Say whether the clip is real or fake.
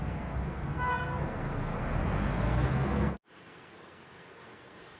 fake